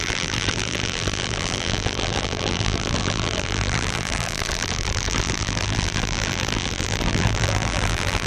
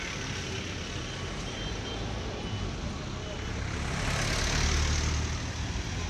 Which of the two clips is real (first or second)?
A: second